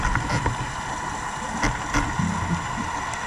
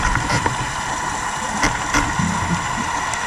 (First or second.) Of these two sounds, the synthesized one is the second